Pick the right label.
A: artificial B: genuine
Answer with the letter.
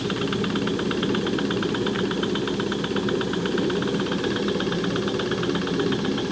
B